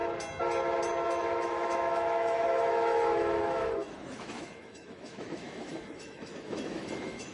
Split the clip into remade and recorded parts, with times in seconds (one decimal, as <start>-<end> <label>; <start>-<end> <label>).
0.0-1.1 recorded; 1.1-7.3 remade